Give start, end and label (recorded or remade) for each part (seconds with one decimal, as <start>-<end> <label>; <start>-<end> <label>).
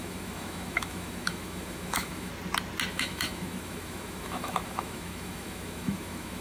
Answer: 0.0-2.3 remade; 2.3-2.9 recorded; 2.9-6.4 remade